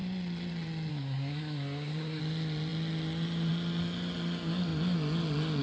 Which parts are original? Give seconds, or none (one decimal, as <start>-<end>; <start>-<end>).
0.0-0.9; 2.2-5.6